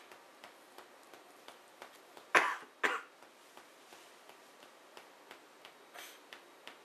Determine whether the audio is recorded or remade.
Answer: recorded